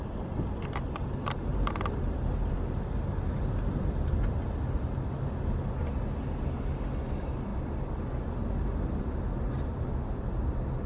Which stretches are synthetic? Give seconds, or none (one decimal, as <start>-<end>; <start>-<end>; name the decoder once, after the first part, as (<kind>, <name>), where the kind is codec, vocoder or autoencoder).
none